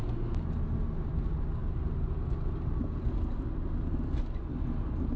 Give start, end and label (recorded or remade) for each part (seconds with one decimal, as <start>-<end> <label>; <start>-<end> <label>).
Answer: 0.0-5.2 recorded